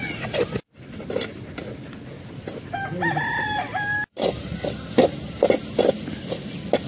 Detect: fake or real real